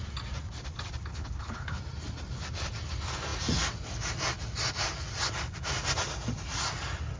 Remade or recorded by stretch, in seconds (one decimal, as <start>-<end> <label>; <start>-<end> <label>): 0.0-1.1 recorded; 1.1-1.8 remade; 1.8-7.2 recorded